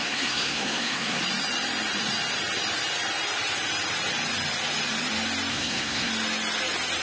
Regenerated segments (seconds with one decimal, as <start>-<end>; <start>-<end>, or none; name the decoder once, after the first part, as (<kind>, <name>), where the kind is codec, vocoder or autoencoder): 0.0-1.2 (codec, SNAC); 5.5-6.1